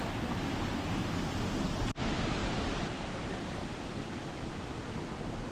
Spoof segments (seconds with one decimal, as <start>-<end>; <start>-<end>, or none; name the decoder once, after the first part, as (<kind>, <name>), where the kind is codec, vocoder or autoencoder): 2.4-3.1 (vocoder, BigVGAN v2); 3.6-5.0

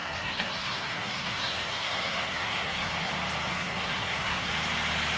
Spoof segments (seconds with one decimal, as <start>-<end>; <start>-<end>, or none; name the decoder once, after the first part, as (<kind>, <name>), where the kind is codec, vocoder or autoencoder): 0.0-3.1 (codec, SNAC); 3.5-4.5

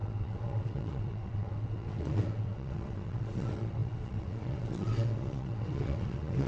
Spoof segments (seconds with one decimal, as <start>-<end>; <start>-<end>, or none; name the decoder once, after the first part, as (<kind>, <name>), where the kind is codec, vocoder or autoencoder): 0.0-6.5 (vocoder, WaveNeXt)

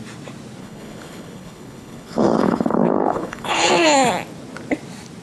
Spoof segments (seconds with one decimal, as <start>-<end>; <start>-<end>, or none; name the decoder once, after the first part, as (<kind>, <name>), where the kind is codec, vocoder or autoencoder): 0.6-3.7 (codec, HILCodec)